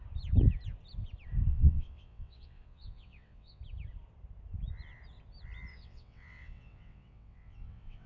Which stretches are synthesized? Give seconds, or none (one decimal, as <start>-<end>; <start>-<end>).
1.5-3.6; 5.7-8.1